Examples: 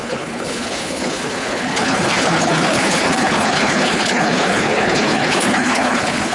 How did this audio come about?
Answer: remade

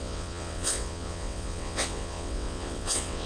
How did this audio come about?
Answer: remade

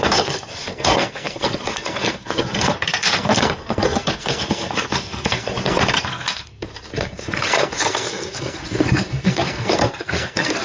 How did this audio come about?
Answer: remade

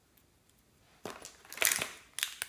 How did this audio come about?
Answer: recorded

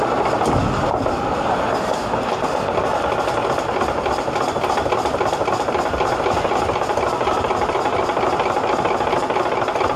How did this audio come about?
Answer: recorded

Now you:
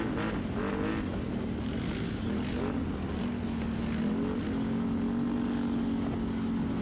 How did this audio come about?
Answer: recorded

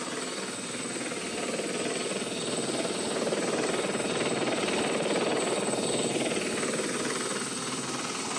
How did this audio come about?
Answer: recorded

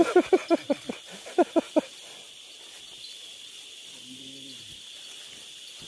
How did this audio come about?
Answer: recorded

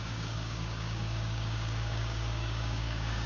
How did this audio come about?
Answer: remade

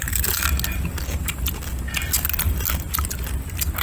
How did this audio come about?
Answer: recorded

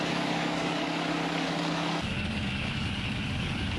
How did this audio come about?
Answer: remade